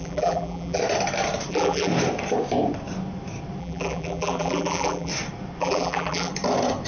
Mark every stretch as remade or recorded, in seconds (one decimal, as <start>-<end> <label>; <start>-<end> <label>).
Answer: 0.0-0.8 remade; 0.8-1.5 recorded; 1.5-1.9 remade; 1.9-3.6 recorded; 3.6-5.1 remade; 5.1-5.6 recorded; 5.6-6.3 remade; 6.3-6.9 recorded